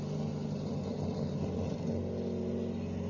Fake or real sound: real